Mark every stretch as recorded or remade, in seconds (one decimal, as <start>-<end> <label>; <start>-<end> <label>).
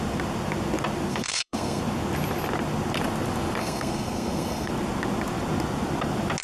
0.0-1.1 recorded; 1.1-1.8 remade; 1.8-3.6 recorded; 3.6-4.7 remade; 4.7-6.4 recorded